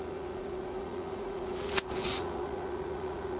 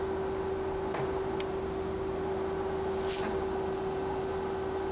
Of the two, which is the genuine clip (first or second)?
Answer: second